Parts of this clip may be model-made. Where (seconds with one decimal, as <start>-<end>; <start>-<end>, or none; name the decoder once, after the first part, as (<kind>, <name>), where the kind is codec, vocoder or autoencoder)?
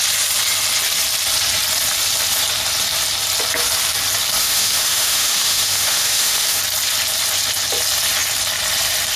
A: 4.4-6.6 (autoencoder, DAC-VAE)